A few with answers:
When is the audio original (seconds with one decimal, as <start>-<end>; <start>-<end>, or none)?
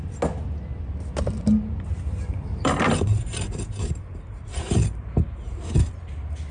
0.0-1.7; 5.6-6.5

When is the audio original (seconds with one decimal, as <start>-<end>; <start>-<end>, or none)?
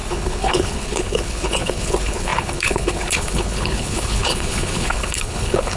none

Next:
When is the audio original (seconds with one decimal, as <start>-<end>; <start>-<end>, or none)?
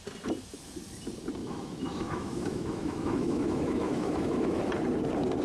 0.0-1.4; 4.6-5.4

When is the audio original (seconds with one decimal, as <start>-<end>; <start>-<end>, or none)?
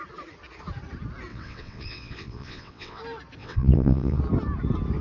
0.0-1.3; 3.0-3.4; 4.2-5.0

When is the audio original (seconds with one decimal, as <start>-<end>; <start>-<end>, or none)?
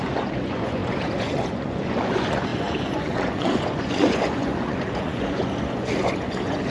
none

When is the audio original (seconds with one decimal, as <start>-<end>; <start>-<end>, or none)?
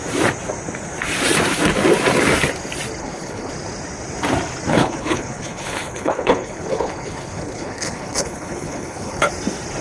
0.0-3.0; 3.5-4.7; 9.3-9.8